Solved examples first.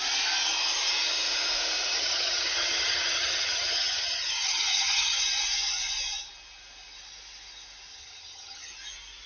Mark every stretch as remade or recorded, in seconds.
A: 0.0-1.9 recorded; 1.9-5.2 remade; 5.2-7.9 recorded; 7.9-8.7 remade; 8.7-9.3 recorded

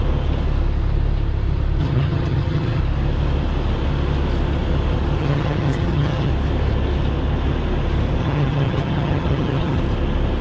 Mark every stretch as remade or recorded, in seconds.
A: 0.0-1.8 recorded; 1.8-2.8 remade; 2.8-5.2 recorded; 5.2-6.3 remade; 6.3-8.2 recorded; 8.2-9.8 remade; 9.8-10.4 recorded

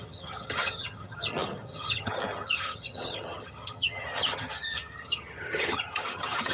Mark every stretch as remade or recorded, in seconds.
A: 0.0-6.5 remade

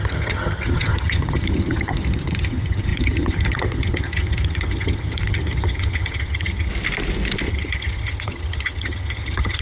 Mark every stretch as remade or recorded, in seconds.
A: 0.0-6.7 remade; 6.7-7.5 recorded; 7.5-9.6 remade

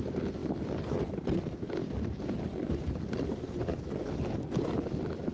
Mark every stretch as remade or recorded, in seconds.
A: 0.0-5.3 recorded